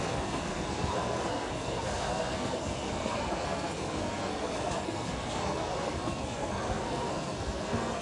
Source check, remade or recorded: remade